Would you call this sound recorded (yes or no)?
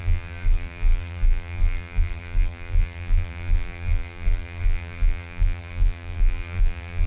no